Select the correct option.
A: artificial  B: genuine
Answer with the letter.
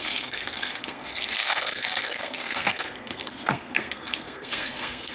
A